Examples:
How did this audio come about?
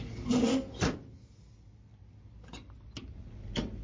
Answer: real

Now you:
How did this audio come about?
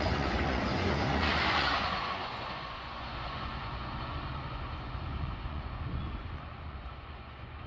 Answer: fake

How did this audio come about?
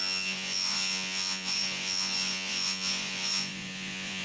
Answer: fake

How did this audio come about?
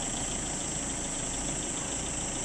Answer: real